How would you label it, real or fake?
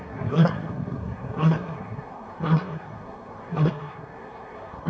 fake